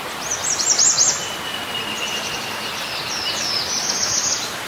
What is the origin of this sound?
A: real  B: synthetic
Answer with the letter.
A